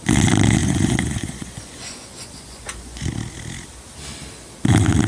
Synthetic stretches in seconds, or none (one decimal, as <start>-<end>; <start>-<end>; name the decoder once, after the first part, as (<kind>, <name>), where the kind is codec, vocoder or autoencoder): 0.6-3.1 (vocoder, Vocos)